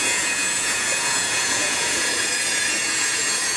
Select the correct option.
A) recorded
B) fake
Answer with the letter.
B